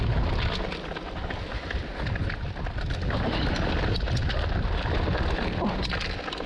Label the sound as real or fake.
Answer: real